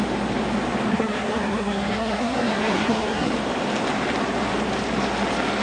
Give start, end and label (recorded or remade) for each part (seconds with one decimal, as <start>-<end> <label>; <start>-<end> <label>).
0.0-0.9 recorded; 0.9-3.3 remade; 3.3-5.6 recorded